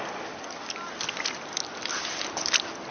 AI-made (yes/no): no